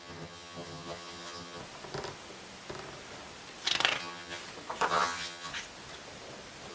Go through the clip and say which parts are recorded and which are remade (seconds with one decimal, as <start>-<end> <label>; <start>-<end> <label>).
0.0-1.6 remade; 1.6-4.0 recorded; 4.0-4.4 remade; 4.4-4.9 recorded; 4.9-5.5 remade; 5.5-6.7 recorded